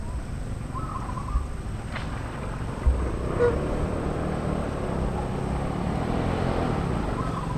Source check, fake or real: real